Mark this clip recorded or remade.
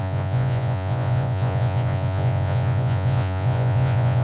remade